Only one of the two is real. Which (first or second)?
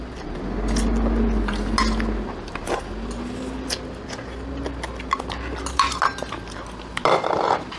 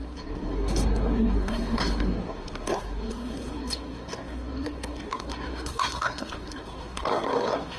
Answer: first